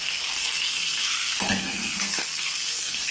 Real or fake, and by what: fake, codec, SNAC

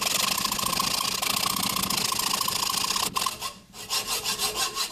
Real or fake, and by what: real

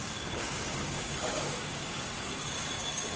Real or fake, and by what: fake, codec, DAC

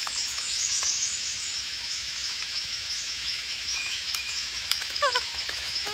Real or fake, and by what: fake, autoencoder, DAC-VAE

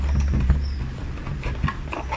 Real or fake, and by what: real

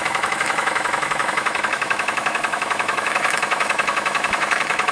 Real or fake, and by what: fake, autoencoder, DAC-VAE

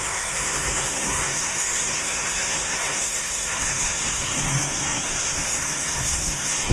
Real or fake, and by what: fake, codec, SNAC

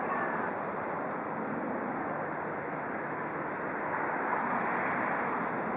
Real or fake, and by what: real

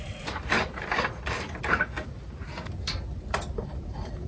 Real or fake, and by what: real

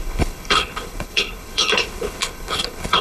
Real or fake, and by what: fake, codec, HILCodec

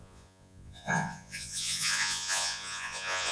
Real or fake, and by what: fake, vocoder, Vocos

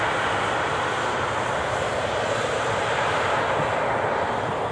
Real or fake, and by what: real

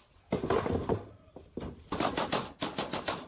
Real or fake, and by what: real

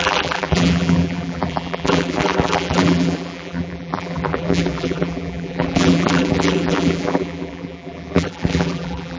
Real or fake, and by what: fake, vocoder, BigVGAN v2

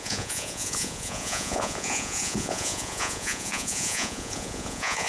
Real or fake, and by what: fake, vocoder, Vocos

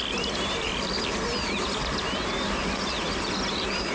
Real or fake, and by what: real